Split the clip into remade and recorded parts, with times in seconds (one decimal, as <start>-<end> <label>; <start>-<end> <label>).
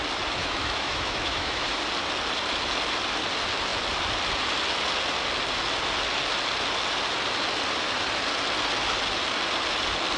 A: 0.0-0.4 recorded; 0.4-1.8 remade; 1.8-10.2 recorded